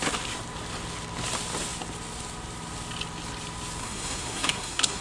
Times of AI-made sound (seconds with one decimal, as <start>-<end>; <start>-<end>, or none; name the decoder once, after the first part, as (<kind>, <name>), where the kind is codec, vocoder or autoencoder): 3.8-5.0 (codec, SNAC)